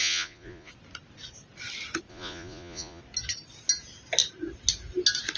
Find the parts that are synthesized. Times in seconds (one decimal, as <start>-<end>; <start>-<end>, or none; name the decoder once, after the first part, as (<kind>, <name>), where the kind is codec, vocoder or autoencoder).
0.0-0.7 (vocoder, Vocos); 2.1-3.0